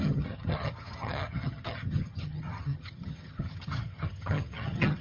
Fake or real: fake